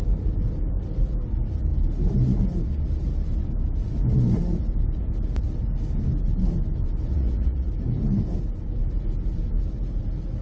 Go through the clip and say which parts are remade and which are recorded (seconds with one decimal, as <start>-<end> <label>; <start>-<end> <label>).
0.0-7.1 recorded; 7.1-7.7 remade; 7.7-10.4 recorded